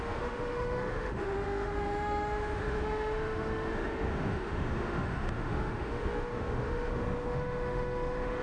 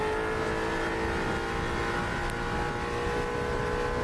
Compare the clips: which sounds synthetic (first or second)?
first